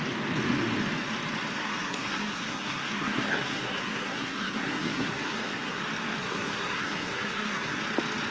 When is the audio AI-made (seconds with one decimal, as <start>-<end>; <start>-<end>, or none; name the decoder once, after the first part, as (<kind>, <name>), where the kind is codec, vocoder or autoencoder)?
1.5-5.8 (codec, SNAC); 6.2-7.8